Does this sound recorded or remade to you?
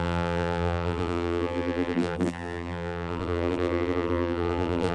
remade